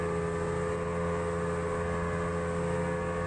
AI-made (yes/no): no